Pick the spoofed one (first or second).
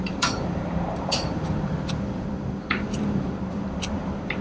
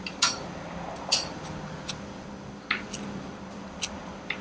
first